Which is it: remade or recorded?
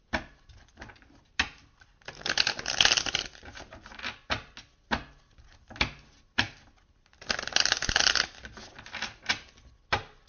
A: recorded